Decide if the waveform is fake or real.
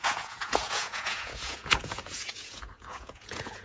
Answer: fake